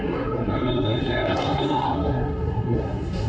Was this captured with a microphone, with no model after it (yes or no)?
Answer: no